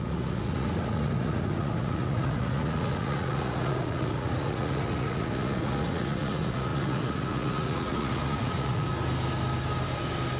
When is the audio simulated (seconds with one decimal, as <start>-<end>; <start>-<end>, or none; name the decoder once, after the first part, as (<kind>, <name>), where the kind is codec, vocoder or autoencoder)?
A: 0.0-8.9 (vocoder, Vocos)